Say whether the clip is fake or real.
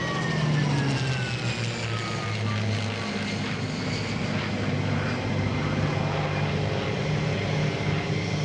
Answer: real